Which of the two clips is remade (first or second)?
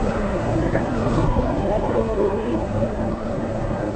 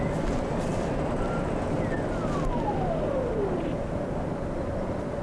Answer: first